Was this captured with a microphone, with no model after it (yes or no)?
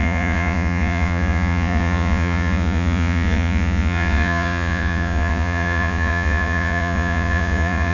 no